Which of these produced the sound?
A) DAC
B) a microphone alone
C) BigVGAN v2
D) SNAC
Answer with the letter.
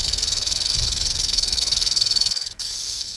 D